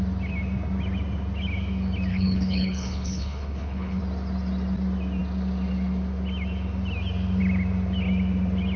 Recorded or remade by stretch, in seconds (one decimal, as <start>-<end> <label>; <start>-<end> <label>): 0.0-2.1 recorded; 2.1-4.0 remade; 4.0-8.8 recorded